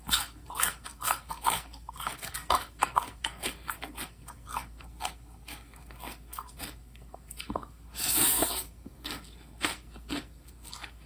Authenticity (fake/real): fake